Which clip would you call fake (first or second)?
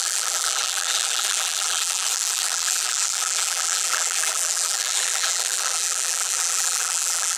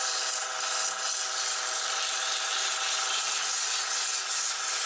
first